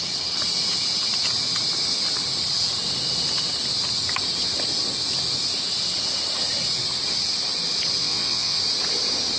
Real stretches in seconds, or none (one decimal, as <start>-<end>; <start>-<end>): 0.0-8.0; 8.6-9.4